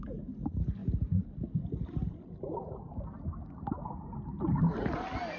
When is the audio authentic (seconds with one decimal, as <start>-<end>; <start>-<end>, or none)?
0.0-0.8; 3.8-5.4